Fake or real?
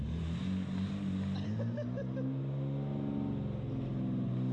real